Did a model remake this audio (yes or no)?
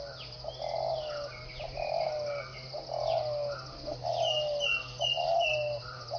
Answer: no